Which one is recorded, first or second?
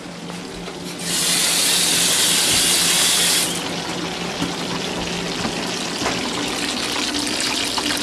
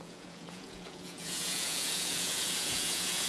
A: first